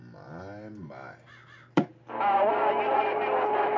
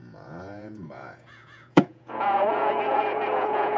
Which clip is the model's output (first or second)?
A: second